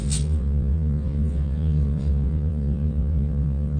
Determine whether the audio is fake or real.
fake